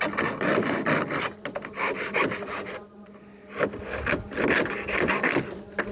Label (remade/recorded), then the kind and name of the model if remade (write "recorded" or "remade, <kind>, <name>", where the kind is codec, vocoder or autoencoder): recorded